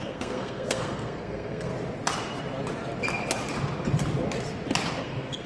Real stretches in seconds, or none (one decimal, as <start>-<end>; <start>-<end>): 1.7-5.0